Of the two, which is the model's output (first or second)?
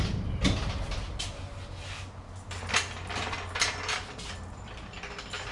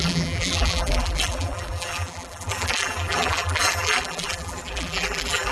second